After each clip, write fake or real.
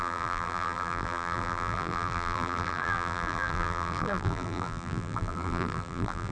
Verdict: fake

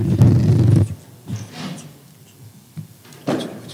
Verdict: real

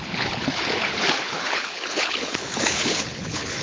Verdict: fake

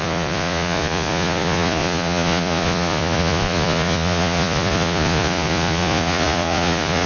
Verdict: fake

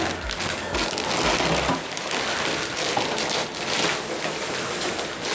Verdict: real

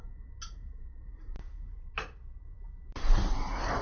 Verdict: real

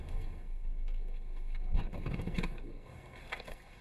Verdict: fake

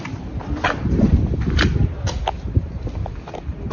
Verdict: real